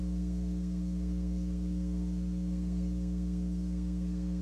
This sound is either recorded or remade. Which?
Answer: remade